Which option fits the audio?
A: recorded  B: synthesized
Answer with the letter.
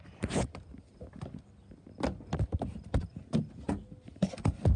A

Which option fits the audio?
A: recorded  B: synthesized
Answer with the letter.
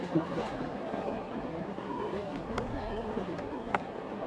B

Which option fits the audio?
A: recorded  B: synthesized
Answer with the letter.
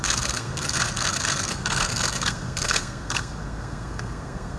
B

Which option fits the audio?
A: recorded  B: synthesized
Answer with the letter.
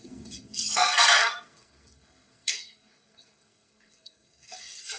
B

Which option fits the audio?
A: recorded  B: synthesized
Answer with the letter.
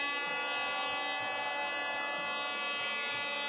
A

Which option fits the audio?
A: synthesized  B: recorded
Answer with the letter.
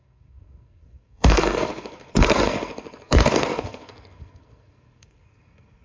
A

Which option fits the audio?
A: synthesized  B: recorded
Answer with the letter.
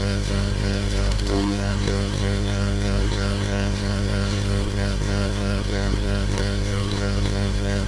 A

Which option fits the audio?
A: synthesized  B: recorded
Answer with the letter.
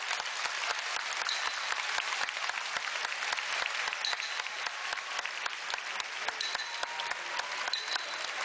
B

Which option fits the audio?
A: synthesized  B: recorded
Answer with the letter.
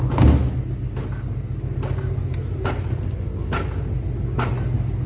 B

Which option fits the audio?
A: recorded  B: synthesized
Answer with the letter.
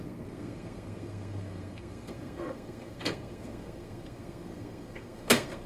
B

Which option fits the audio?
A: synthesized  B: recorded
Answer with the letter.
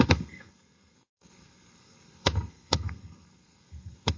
A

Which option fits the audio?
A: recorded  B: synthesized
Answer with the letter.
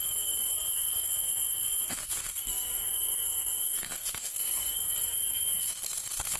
B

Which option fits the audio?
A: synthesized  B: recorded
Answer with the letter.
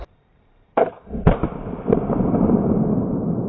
B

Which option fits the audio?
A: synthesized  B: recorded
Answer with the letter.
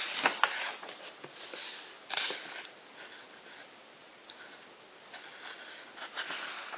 B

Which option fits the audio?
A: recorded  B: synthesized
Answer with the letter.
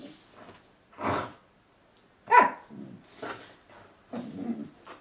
A